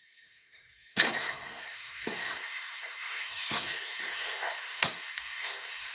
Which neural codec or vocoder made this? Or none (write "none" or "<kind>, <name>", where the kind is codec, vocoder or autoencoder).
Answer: codec, SNAC